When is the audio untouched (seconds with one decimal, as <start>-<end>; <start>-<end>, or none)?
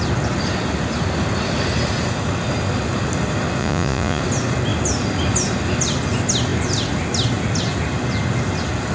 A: 0.0-3.6; 4.2-8.9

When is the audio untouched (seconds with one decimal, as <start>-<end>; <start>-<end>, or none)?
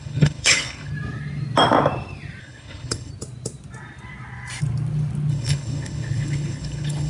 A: 0.9-2.4; 3.1-5.3